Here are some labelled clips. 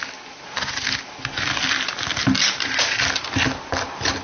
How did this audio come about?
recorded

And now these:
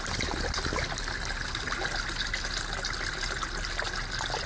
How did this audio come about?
recorded